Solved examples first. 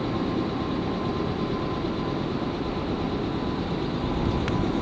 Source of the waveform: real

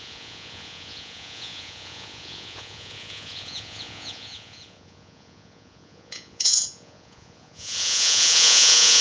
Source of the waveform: fake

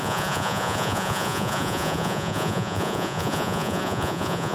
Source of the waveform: fake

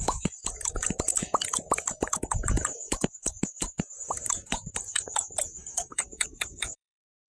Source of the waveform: fake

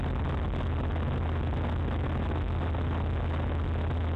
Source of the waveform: real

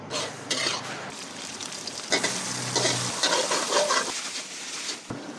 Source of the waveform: real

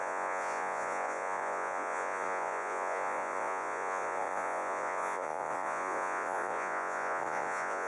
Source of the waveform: fake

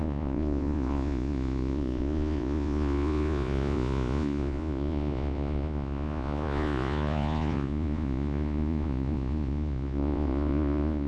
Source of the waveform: fake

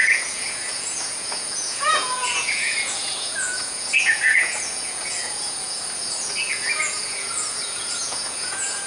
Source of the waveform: fake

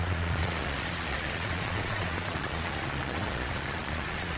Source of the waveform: fake